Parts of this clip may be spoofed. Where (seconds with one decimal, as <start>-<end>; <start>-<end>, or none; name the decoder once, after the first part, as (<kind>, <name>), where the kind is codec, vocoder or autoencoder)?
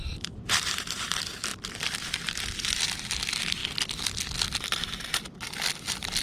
1.5-2.3 (vocoder, BigVGAN v2)